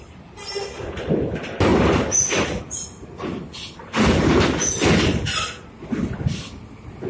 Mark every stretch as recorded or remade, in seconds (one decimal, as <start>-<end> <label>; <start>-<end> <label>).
0.0-7.1 recorded